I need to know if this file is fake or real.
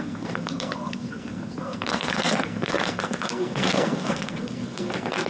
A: fake